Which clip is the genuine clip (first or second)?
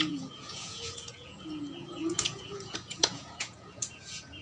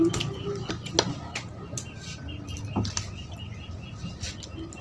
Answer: second